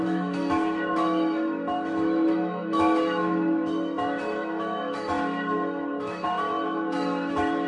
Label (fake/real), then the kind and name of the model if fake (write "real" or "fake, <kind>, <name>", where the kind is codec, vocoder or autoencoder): fake, autoencoder, DAC-VAE